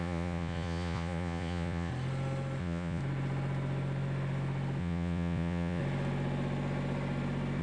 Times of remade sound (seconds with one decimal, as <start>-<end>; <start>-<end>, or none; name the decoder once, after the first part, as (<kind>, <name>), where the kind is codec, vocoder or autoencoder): 0.0-1.9 (vocoder, Vocos); 2.6-3.0; 4.8-5.8